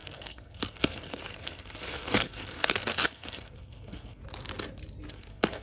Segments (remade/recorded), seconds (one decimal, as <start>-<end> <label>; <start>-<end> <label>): 0.0-4.2 remade; 4.2-5.1 recorded; 5.1-5.6 remade